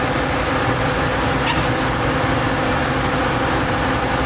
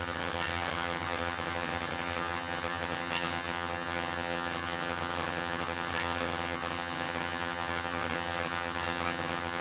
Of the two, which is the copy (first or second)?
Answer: second